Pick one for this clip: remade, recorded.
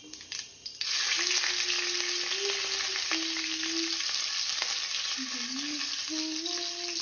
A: recorded